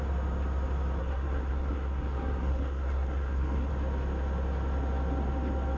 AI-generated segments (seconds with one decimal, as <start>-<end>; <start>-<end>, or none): 1.0-3.7